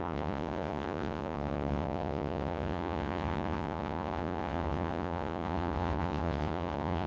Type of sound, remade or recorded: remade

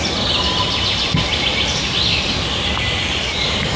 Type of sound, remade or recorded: recorded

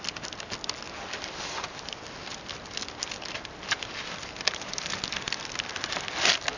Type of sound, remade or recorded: recorded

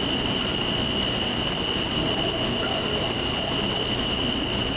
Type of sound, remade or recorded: recorded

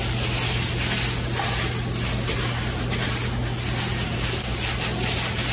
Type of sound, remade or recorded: recorded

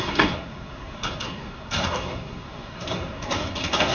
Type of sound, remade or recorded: remade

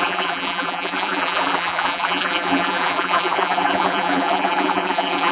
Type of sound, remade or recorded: remade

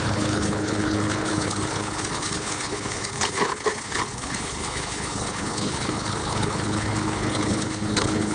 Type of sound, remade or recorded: remade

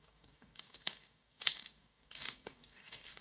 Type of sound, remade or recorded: remade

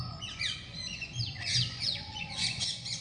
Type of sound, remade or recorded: remade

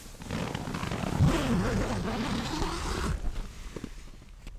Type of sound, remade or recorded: recorded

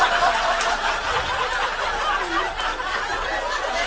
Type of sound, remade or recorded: recorded